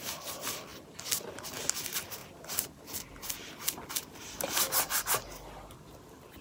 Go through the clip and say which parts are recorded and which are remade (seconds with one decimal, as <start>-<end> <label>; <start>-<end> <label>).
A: 0.0-2.2 recorded; 2.2-4.6 remade; 4.6-6.4 recorded